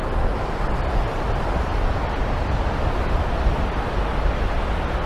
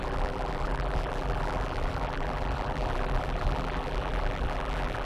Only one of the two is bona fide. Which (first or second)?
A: first